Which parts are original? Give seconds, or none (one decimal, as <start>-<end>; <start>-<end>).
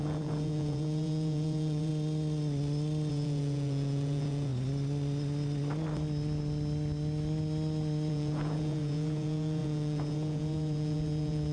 1.9-3.1; 4.5-8.1